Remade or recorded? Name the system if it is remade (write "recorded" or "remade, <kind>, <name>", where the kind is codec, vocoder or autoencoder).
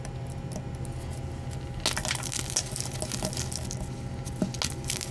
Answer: recorded